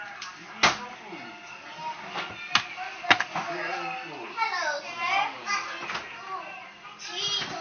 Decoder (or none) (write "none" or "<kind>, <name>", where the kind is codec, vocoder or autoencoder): none